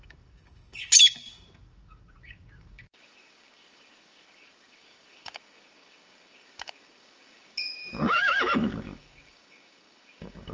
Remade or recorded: remade